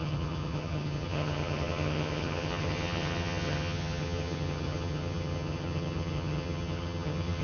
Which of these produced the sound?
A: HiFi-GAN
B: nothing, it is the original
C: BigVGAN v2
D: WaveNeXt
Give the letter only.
A